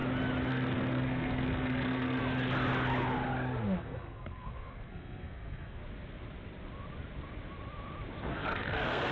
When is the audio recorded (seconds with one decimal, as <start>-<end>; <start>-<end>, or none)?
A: 0.0-0.5; 2.2-3.8; 5.8-8.3

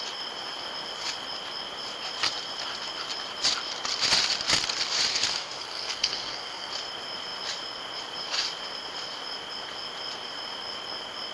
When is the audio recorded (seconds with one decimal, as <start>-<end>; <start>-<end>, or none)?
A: 0.0-5.1; 6.7-11.3

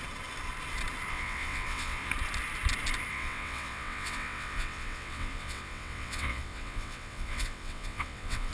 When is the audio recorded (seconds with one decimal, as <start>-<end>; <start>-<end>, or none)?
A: 0.0-1.1; 2.1-3.1

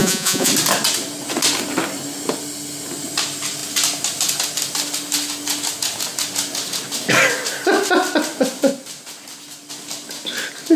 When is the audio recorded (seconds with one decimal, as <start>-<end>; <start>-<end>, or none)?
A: 0.5-10.8